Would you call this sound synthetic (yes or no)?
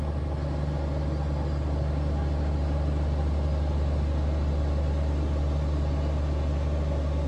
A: no